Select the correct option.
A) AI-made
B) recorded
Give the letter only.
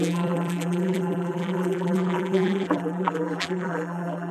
A